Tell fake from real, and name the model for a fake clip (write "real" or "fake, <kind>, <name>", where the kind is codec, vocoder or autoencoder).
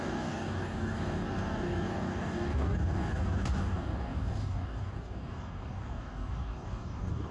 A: fake, codec, DAC